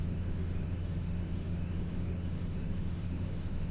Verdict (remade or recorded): remade